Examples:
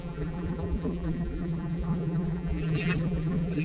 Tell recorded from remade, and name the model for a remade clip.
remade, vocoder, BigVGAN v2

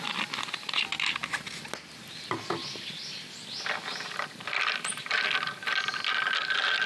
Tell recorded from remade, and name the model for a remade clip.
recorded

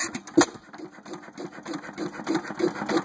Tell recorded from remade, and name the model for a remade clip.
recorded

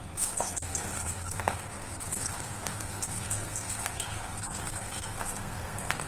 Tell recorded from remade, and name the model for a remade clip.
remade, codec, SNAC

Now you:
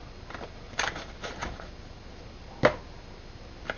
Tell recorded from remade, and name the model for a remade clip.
recorded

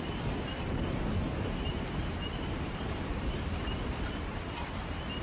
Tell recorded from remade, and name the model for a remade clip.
recorded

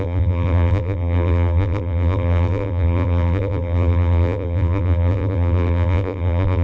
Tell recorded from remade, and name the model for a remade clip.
remade, vocoder, BigVGAN v2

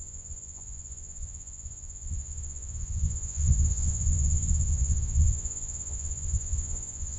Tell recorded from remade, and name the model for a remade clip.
remade, vocoder, Vocos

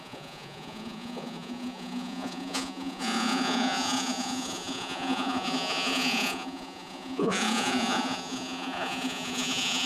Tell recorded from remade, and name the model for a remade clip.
remade, vocoder, Vocos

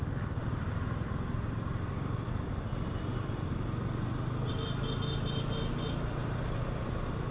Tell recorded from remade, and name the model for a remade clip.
recorded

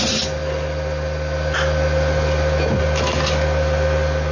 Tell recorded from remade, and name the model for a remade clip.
recorded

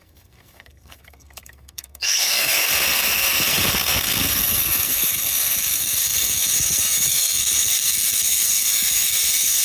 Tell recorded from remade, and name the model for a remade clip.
remade, codec, SNAC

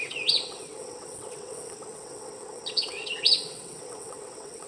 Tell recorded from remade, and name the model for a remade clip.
remade, vocoder, WaveNeXt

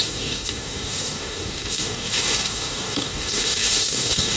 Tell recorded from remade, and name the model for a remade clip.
remade, codec, DAC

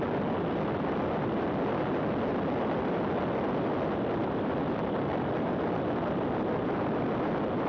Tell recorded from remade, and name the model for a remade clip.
recorded